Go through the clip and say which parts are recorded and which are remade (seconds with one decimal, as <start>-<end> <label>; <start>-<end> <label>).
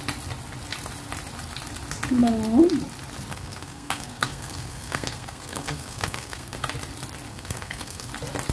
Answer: 0.0-3.3 recorded; 3.3-6.6 remade; 6.6-7.3 recorded; 7.3-8.1 remade; 8.1-8.5 recorded